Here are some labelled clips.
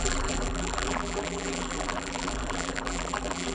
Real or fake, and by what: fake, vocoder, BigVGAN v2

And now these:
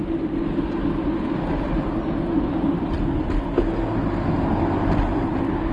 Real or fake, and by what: real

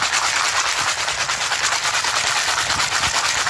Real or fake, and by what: real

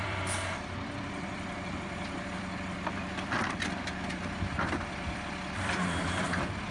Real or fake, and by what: fake, vocoder, BigVGAN v2